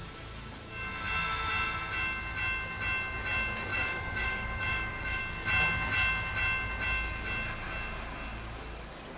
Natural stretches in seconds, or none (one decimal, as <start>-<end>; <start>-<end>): 0.0-3.7; 5.2-9.2